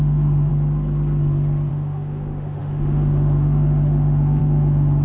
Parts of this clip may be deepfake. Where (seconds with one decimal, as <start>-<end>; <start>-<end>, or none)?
0.0-0.5; 1.7-5.0